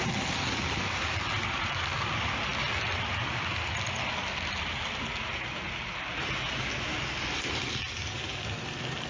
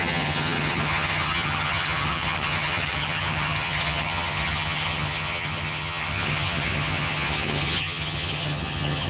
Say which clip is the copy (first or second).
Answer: second